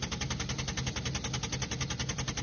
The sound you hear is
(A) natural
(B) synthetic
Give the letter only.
A